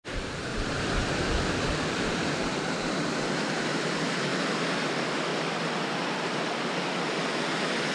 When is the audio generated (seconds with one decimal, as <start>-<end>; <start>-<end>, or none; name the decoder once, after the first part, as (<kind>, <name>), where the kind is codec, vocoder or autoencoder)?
0.5-1.2 (vocoder, BigVGAN v2); 2.8-3.7; 5.3-5.9